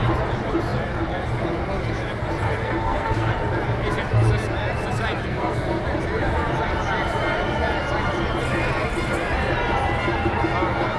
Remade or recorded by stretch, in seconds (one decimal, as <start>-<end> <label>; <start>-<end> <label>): 0.0-2.6 recorded; 2.6-3.3 remade; 3.3-5.2 recorded; 5.2-5.8 remade; 5.8-11.0 recorded